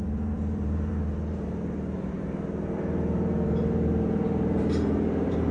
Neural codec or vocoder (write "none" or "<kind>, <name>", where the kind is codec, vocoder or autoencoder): vocoder, BigVGAN v2